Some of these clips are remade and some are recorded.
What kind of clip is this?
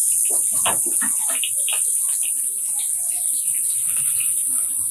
recorded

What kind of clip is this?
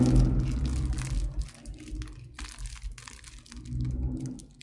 recorded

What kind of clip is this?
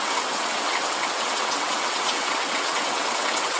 remade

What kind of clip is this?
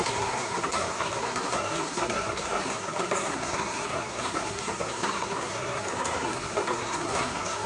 remade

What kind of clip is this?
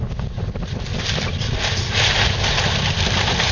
recorded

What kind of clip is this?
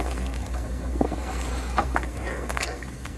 remade